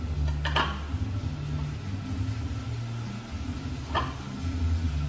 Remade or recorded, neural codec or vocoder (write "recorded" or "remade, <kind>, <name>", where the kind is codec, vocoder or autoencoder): recorded